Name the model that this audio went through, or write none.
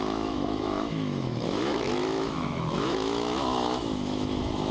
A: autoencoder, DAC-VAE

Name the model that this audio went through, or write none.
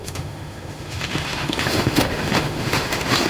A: autoencoder, DAC-VAE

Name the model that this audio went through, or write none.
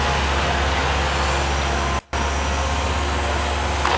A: none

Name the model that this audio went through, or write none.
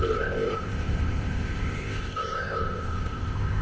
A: codec, ZipCodec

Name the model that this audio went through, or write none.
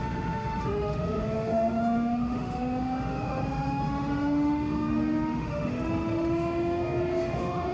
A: autoencoder, DAC-VAE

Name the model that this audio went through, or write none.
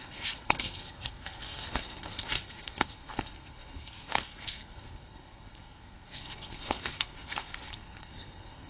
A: codec, SNAC